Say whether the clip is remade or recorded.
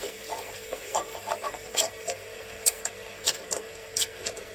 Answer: remade